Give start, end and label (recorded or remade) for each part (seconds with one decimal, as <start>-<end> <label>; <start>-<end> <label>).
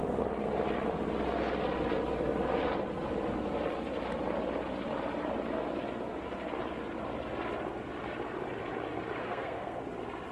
0.0-9.2 recorded; 9.2-9.8 remade; 9.8-10.3 recorded